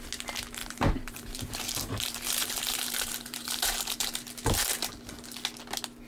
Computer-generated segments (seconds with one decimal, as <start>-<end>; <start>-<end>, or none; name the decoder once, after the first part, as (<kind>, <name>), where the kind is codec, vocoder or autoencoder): 0.6-4.3 (vocoder, BigVGAN v2)